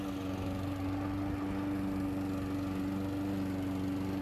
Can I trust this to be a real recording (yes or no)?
yes